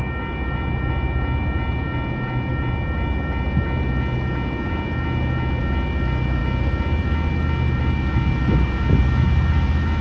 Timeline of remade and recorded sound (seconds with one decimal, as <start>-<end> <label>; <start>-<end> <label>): 0.0-10.0 recorded